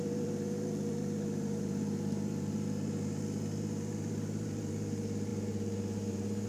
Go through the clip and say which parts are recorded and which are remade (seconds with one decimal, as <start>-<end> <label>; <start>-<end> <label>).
0.0-6.5 remade